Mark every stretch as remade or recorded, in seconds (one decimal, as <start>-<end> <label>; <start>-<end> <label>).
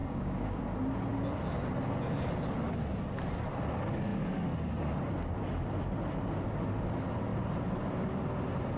0.0-0.6 remade; 0.6-8.8 recorded